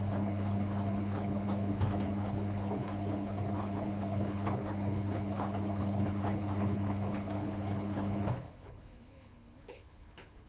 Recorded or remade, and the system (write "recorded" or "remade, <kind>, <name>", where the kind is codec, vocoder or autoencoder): remade, codec, HILCodec